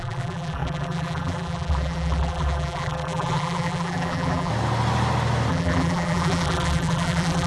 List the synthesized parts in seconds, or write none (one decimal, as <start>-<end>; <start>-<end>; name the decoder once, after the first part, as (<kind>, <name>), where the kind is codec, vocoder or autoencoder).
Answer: 0.0-4.5 (vocoder, BigVGAN v2); 5.5-7.5